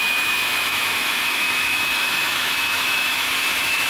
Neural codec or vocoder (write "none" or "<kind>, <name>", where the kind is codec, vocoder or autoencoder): autoencoder, DAC-VAE